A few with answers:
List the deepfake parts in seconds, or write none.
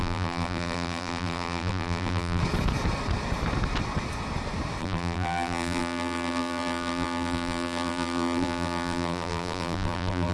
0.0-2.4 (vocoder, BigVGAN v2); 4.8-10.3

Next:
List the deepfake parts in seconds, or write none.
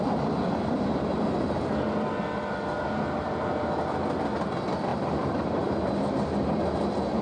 4.9-5.7 (vocoder, BigVGAN v2)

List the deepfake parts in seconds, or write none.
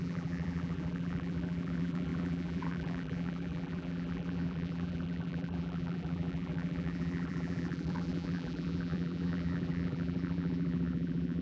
0.0-11.4 (vocoder, BigVGAN v2)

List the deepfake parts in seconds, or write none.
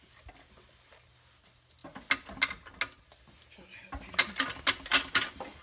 none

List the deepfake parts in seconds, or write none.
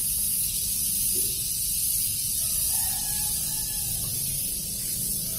2.1-3.3 (vocoder, BigVGAN v2); 4.1-5.4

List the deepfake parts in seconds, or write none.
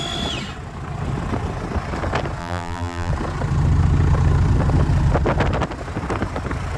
2.4-3.1 (vocoder, BigVGAN v2)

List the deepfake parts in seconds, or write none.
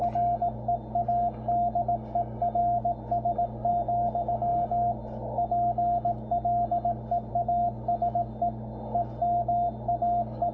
none